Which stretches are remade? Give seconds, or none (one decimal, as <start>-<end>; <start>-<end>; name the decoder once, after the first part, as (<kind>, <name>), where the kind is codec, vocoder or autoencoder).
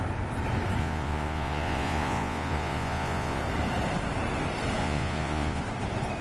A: 0.8-3.4 (vocoder, Vocos); 4.8-5.6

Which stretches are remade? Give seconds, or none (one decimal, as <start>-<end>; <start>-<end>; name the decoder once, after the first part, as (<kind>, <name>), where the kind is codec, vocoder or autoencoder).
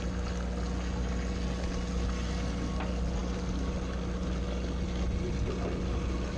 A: none